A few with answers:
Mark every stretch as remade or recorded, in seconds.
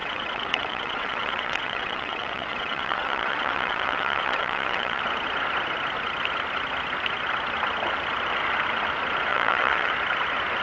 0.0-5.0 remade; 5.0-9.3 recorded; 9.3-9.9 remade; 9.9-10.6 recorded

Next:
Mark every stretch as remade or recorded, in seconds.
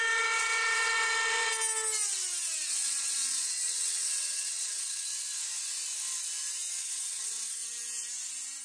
0.0-1.5 remade; 1.5-2.7 recorded; 2.7-5.1 remade; 5.1-6.8 recorded; 6.8-7.6 remade; 7.6-8.6 recorded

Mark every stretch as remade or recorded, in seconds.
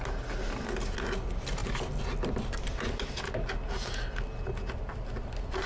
0.0-5.7 recorded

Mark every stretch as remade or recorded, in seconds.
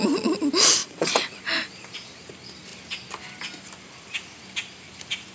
0.0-0.8 recorded; 0.8-1.4 remade; 1.4-5.3 recorded